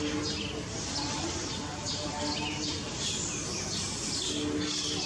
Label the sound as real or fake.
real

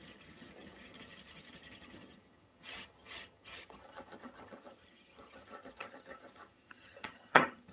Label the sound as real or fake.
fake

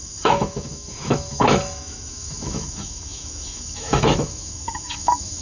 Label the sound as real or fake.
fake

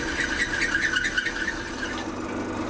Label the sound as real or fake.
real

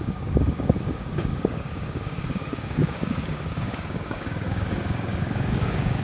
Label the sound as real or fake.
fake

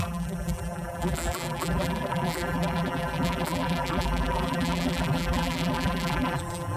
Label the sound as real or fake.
fake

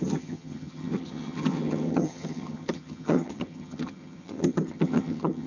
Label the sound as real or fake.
fake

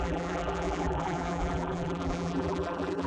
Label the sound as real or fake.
fake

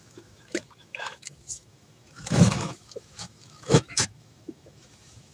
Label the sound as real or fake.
fake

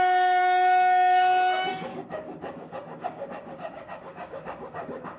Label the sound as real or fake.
fake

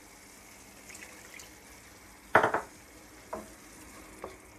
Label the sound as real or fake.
real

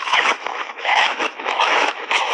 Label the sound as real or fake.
fake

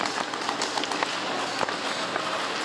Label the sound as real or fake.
real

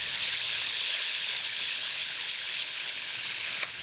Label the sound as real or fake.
fake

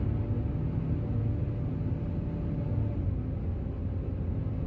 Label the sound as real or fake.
real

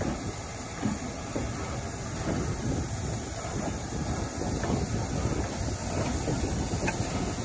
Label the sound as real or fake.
real